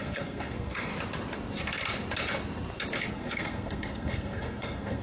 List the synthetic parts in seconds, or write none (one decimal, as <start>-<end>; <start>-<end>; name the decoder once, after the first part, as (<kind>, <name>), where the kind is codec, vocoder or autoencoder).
0.0-0.9 (codec, SNAC); 3.1-5.0

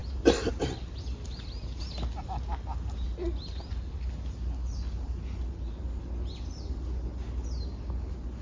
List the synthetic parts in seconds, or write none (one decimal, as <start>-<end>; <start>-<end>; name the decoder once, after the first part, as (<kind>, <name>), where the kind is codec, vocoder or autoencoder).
0.0-0.5 (vocoder, BigVGAN v2)

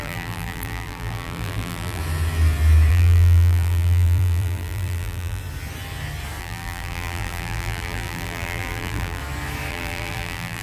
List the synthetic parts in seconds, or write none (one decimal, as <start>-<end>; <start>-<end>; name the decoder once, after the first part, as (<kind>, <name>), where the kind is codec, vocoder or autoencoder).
0.0-2.0 (vocoder, BigVGAN v2); 2.9-5.4; 6.4-9.2; 9.7-10.6